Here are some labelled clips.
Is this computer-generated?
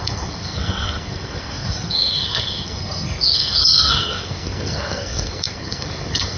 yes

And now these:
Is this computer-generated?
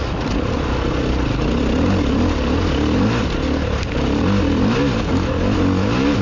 no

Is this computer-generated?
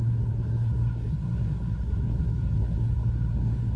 yes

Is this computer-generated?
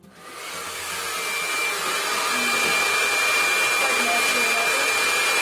no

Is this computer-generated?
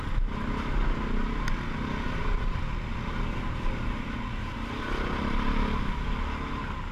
no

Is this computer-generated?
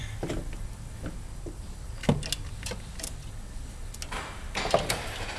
no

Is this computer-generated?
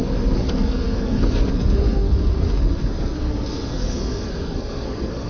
yes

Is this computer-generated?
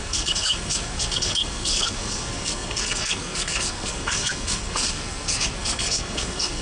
yes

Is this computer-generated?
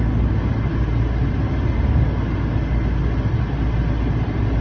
no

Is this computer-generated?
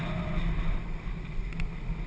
no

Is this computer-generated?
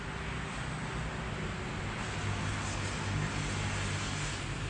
no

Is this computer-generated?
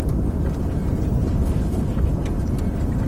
no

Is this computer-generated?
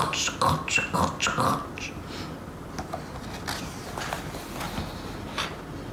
no